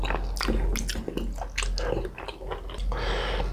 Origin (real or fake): real